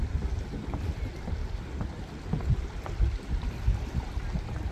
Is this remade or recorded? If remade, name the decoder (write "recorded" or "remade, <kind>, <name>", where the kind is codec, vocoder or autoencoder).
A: recorded